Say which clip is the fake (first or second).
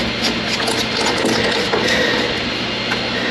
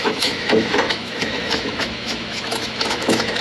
second